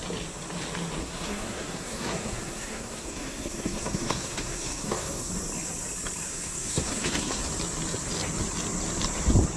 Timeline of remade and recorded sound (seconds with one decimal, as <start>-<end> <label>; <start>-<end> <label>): 0.0-1.0 recorded; 1.0-5.3 remade; 5.3-6.3 recorded; 6.3-7.4 remade; 7.4-9.6 recorded